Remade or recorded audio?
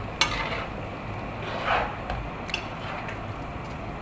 recorded